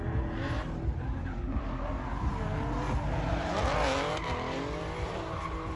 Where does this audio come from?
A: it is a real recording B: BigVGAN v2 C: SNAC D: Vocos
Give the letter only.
A